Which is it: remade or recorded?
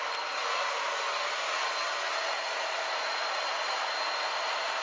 recorded